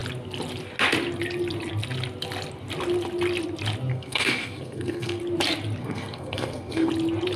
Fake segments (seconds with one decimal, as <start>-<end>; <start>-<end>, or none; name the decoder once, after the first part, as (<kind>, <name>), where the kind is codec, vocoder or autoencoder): 3.9-5.2 (codec, SNAC); 5.8-6.9